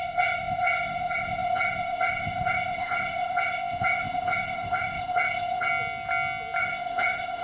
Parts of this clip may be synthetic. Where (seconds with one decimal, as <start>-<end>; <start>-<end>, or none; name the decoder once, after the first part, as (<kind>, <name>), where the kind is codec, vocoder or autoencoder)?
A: 0.0-5.7 (codec, ZipCodec); 6.6-7.4

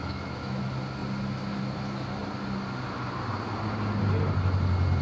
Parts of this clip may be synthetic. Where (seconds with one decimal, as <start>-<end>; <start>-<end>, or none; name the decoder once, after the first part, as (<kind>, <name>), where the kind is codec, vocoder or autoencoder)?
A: 0.0-0.6 (autoencoder, DAC-VAE)

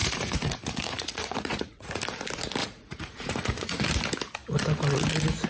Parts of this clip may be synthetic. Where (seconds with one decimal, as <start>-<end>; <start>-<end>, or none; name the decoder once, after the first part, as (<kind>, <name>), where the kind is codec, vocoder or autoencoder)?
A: 0.0-2.0 (vocoder, Vocos); 2.6-3.8

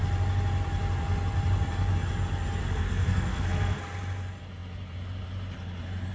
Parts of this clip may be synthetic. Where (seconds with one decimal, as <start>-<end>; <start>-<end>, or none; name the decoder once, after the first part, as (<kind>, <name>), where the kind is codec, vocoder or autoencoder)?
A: 2.6-3.8 (codec, SNAC)